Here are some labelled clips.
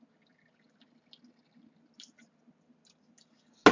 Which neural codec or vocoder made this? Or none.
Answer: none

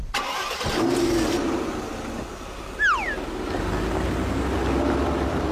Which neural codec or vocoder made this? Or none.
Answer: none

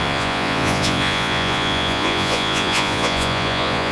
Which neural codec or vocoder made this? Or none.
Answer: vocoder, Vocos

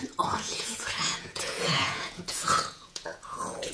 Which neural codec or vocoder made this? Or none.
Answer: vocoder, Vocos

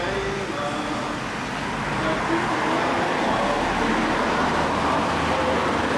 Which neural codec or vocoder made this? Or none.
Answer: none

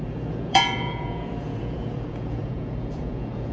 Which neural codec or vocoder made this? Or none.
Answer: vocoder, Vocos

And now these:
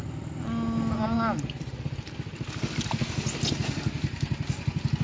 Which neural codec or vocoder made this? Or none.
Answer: none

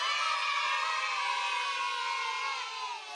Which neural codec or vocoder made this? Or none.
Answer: none